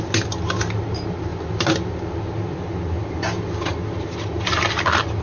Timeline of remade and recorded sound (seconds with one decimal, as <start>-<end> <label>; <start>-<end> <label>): 0.0-5.2 recorded